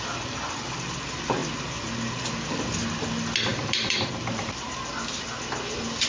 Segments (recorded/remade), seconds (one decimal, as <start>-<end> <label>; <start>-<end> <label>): 0.0-3.5 recorded; 3.5-4.1 remade; 4.1-6.1 recorded